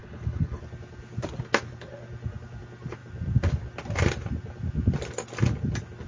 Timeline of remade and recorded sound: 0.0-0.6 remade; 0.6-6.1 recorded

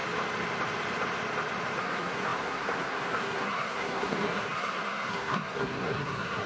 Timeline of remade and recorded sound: 0.0-1.8 recorded; 1.8-6.5 remade

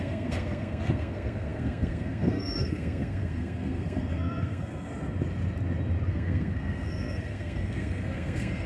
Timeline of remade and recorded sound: 0.0-4.9 remade; 4.9-6.1 recorded; 6.1-8.7 remade

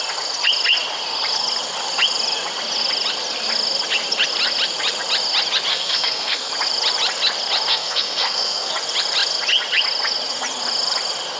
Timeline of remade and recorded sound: 0.0-5.7 recorded; 5.7-6.5 remade; 6.5-7.7 recorded; 7.7-8.7 remade; 8.7-11.4 recorded

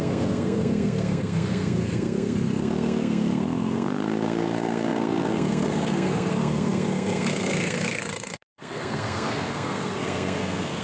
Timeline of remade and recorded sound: 0.0-10.8 remade